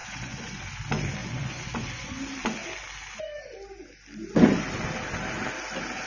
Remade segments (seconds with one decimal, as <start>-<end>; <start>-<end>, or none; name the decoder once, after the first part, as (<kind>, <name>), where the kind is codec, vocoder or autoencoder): 0.0-0.6 (vocoder, Vocos); 1.2-2.2